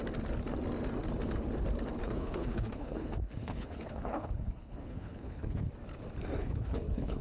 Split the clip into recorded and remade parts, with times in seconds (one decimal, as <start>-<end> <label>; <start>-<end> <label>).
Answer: 0.0-2.0 recorded; 2.0-5.7 remade; 5.7-6.4 recorded; 6.4-7.2 remade